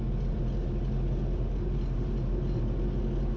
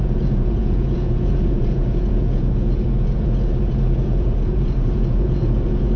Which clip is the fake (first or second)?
second